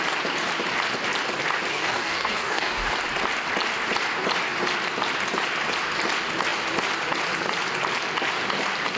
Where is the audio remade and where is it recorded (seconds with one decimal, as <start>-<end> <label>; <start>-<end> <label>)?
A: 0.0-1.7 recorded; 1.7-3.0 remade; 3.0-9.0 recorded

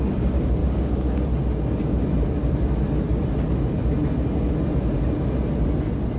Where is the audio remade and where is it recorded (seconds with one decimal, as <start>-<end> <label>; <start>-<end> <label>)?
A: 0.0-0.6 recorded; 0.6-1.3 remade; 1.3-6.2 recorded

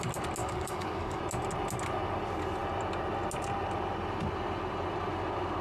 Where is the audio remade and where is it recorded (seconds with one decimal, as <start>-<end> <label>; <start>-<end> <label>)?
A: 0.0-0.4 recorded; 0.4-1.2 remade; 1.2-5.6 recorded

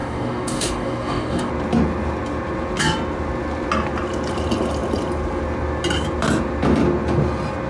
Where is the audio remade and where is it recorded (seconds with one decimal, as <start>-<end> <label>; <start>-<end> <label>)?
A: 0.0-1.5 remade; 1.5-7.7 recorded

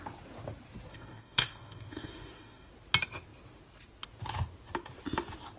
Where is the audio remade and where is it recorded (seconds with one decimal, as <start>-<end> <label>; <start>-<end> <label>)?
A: 0.0-0.9 recorded; 0.9-2.7 remade; 2.7-5.6 recorded

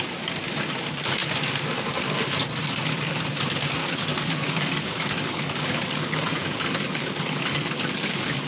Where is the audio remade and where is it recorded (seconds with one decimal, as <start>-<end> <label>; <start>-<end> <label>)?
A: 0.0-3.8 recorded; 3.8-8.5 remade

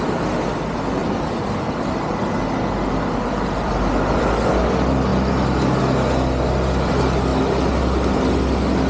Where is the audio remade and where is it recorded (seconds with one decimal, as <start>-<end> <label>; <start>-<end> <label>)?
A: 0.0-8.9 recorded